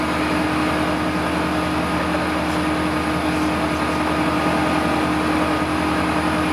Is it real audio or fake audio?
real